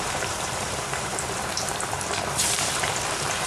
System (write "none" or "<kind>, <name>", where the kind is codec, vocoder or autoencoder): vocoder, BigVGAN v2